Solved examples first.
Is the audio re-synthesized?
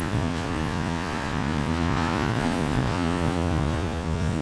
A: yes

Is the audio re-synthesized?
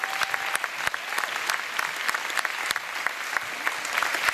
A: no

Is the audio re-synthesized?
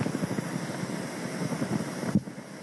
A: no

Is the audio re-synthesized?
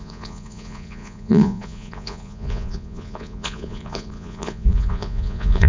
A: yes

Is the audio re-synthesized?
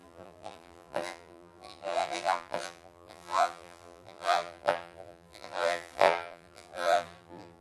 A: yes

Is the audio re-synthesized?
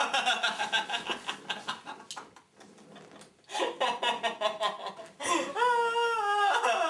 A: no